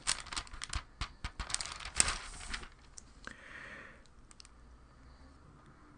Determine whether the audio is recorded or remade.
recorded